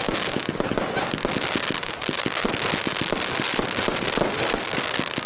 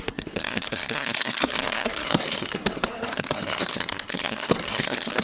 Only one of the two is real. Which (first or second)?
first